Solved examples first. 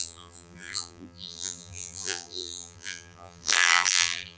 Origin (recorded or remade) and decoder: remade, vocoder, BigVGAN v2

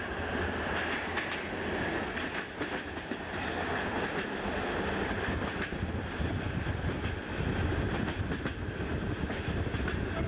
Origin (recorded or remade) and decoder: recorded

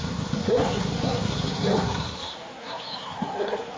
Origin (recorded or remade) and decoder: remade, codec, SNAC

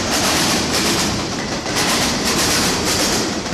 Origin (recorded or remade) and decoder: remade, vocoder, BigVGAN v2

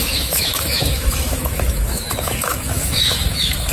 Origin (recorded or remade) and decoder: remade, autoencoder, DAC-VAE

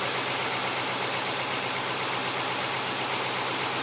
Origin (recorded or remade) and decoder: recorded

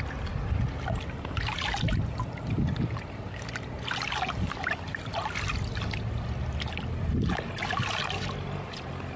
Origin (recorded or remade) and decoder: recorded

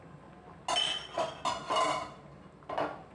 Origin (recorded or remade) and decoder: recorded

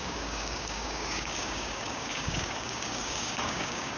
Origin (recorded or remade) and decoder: remade, codec, DAC